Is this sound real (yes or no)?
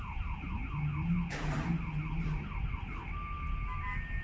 yes